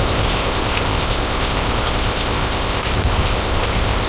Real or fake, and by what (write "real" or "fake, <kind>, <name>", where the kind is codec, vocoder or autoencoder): fake, codec, ZipCodec